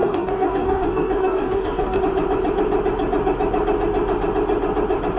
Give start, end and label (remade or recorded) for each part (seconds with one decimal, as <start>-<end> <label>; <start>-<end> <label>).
0.0-2.0 remade; 2.0-5.2 recorded